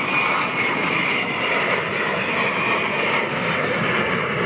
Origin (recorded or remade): recorded